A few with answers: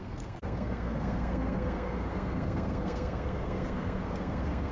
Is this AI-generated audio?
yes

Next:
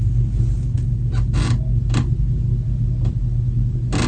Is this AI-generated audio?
no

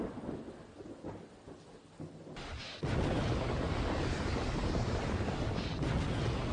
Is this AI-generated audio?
no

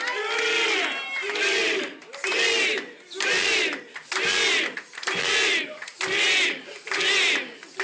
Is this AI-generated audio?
no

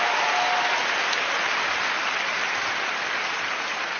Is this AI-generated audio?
no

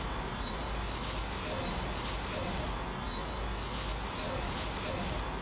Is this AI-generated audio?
no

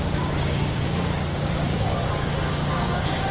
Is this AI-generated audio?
yes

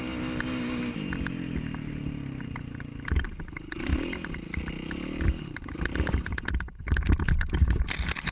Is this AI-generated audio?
no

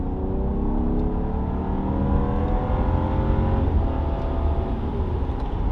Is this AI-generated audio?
no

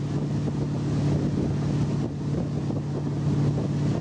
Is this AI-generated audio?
no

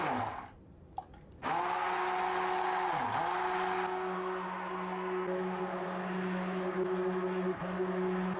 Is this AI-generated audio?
no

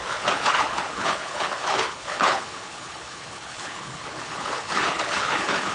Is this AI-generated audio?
yes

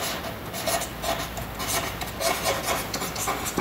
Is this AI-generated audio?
no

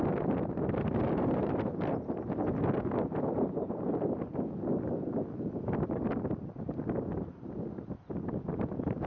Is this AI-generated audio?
no